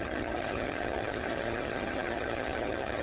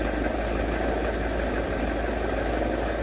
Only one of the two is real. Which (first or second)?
second